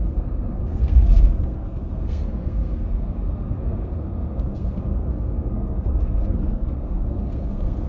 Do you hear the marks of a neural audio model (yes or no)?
yes